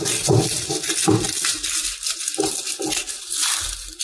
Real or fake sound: real